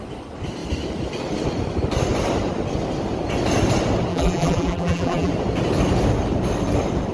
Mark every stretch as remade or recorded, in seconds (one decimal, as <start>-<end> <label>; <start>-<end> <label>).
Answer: 0.0-4.1 recorded; 4.1-5.3 remade; 5.3-7.1 recorded

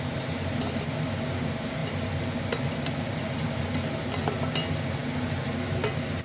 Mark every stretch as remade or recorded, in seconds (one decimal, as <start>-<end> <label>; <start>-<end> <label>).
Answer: 0.0-6.2 recorded

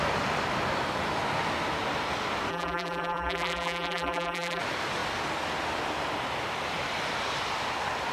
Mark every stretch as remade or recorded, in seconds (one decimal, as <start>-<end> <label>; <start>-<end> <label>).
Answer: 0.0-2.5 recorded; 2.5-4.6 remade; 4.6-8.1 recorded

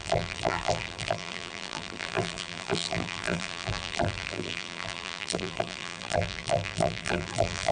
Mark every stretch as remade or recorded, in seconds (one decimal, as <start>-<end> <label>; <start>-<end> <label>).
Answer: 0.0-7.7 remade

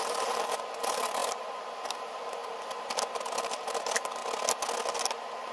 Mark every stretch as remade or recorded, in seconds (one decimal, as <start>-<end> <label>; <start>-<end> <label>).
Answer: 0.0-2.4 remade; 2.4-3.4 recorded; 3.4-4.2 remade; 4.2-5.5 recorded